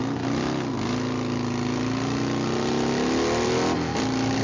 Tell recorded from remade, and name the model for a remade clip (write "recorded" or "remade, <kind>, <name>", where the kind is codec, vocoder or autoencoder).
recorded